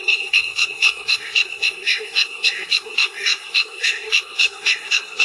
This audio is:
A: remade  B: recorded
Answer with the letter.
A